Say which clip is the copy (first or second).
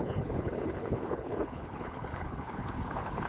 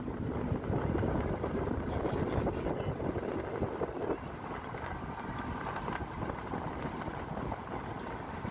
first